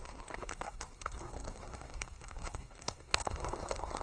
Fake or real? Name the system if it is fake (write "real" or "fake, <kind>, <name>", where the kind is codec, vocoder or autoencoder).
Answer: fake, codec, SNAC